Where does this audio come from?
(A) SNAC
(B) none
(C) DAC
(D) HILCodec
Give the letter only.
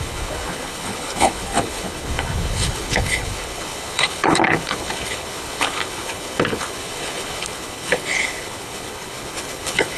D